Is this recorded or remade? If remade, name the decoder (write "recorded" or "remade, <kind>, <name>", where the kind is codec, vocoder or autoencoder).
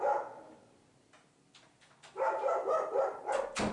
recorded